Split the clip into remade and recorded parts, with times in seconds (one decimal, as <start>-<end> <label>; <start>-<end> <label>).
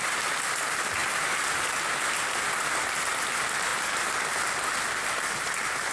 0.0-5.9 recorded